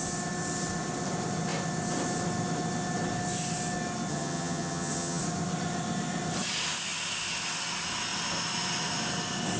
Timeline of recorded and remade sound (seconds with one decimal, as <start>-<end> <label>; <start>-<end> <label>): 0.0-4.1 recorded; 4.1-5.2 remade; 5.2-9.6 recorded